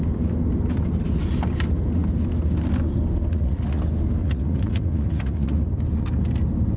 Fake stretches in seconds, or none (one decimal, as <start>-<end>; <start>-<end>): 3.3-3.8; 4.2-5.7